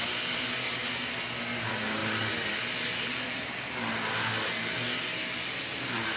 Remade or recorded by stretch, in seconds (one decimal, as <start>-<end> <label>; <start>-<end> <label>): 0.0-6.2 recorded